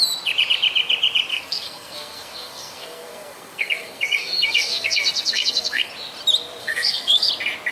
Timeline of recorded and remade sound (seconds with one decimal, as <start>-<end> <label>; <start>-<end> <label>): 0.0-1.3 recorded; 1.3-5.9 remade; 5.9-6.6 recorded; 6.6-7.3 remade; 7.3-7.7 recorded